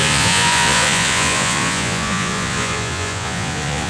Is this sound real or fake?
fake